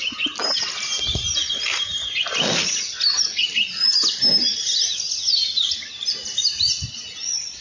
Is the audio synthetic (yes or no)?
no